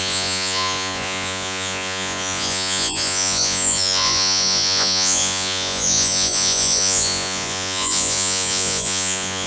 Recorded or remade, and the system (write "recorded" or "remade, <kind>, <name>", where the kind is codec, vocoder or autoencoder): remade, vocoder, Vocos